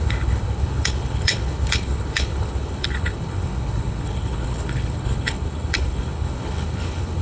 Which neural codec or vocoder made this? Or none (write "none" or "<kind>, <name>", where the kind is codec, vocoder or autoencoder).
codec, HILCodec